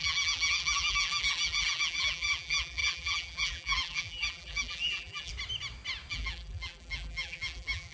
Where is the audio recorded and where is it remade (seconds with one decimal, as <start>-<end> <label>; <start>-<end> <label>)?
0.0-5.3 remade; 5.3-6.1 recorded; 6.1-7.9 remade